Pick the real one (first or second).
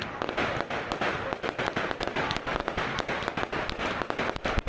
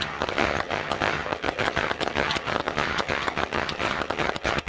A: first